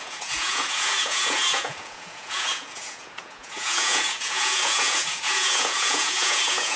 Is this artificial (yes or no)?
yes